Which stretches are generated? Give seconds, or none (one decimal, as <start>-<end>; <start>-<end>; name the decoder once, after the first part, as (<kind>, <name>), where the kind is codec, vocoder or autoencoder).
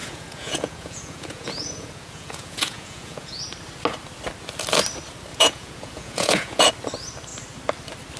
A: 0.0-3.4 (vocoder, Vocos); 5.3-6.7